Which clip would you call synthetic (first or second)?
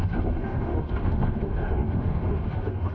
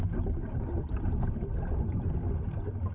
first